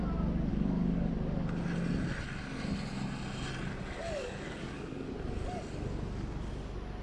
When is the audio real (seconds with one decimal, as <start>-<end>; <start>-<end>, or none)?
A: 0.0-0.5; 1.1-4.2; 5.1-7.0